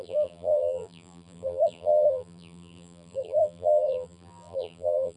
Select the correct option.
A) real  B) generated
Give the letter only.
B